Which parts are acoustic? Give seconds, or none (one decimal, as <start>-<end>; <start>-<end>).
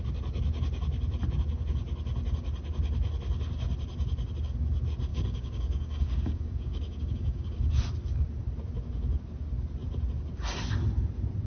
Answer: 0.0-5.1; 7.7-11.5